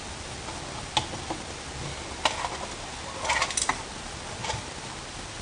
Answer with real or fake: real